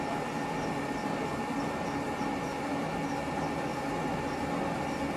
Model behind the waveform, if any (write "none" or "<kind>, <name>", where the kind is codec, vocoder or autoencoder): none